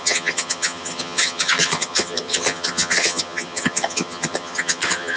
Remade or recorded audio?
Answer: remade